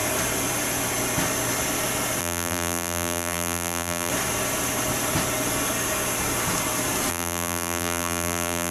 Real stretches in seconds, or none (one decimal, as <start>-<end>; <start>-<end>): 0.0-2.2; 4.1-7.1

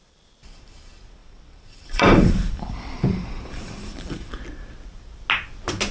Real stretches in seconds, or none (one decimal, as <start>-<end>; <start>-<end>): 0.0-1.2; 4.3-5.9

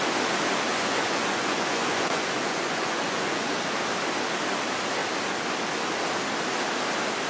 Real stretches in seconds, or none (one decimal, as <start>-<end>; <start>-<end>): 0.0-0.7; 3.5-7.3

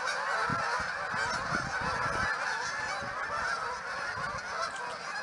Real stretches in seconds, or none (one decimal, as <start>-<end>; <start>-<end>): 0.0-5.2

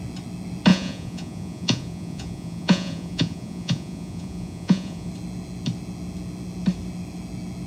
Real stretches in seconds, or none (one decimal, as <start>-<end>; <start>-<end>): 0.0-0.7; 5.1-7.7